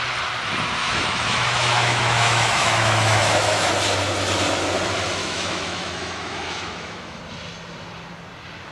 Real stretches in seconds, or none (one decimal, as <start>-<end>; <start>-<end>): 0.0-0.8; 3.7-5.2; 7.2-8.7